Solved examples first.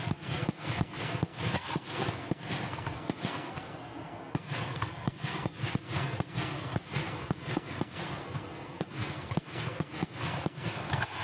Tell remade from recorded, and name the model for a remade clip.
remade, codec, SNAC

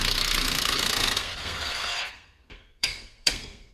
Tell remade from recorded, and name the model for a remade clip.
remade, codec, SNAC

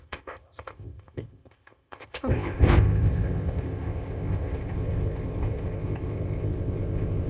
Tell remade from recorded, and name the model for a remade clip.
remade, codec, ZipCodec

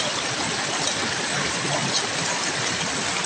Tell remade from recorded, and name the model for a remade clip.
recorded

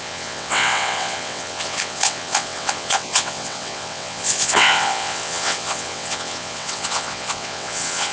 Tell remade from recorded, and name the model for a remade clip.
remade, vocoder, WaveNeXt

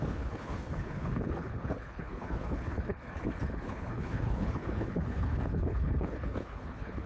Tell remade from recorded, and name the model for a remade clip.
remade, codec, HILCodec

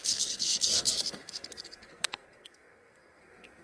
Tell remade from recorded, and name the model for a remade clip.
remade, codec, SNAC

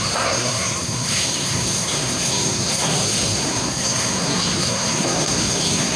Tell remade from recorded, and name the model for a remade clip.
remade, codec, SNAC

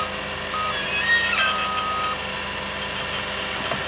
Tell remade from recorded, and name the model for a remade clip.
recorded